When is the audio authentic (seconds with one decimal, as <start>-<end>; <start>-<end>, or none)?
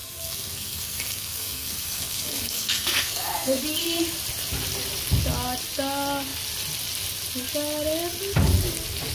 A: 3.6-9.1